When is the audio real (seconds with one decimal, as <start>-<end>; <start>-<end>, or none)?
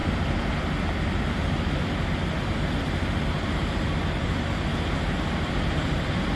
0.0-6.4